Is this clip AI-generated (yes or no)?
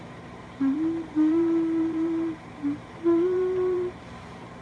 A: yes